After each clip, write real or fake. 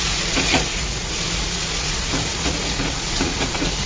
fake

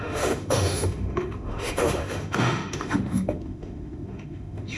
fake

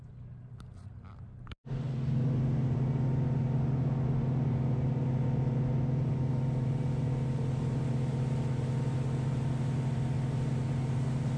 real